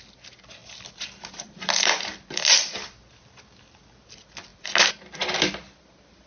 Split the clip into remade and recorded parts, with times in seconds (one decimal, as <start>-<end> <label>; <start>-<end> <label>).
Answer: 0.0-0.6 recorded; 0.6-3.4 remade; 3.4-6.3 recorded